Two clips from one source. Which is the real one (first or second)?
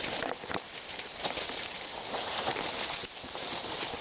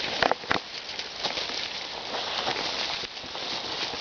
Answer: second